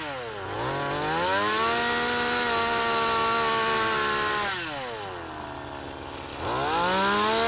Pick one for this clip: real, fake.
real